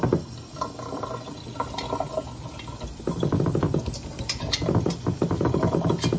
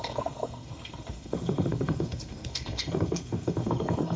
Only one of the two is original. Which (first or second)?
first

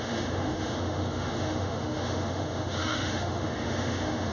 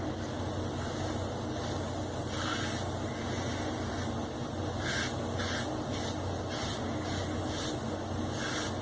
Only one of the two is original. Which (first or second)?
second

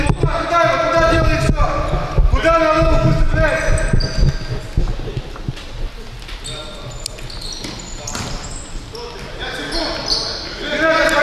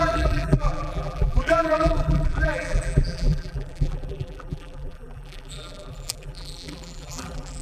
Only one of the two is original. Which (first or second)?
first